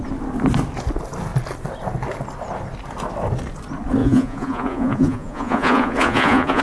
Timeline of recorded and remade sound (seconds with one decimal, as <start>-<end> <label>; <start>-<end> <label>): 0.0-4.0 recorded; 4.0-6.6 remade